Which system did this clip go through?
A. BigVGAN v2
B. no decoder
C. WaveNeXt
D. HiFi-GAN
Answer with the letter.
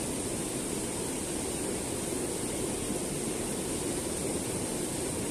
B